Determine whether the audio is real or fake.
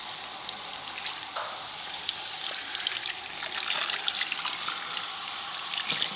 real